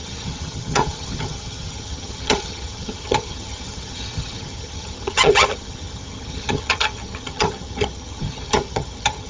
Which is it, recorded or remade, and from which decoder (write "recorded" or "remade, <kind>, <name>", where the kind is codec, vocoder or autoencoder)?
remade, vocoder, HiFi-GAN